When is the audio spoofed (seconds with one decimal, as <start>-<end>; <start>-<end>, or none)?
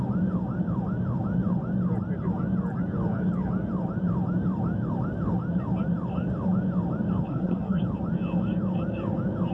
7.3-7.8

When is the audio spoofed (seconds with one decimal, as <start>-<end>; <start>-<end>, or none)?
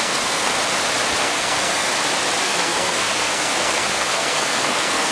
0.0-0.5; 1.2-1.9; 2.4-5.1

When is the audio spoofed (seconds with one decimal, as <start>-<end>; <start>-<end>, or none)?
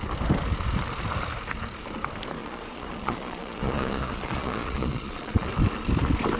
2.4-5.5